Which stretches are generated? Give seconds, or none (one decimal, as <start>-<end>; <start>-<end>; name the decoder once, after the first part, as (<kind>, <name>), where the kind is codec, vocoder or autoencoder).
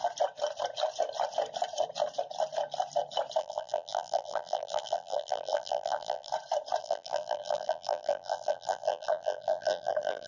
3.4-6.3 (vocoder, BigVGAN v2); 6.8-10.3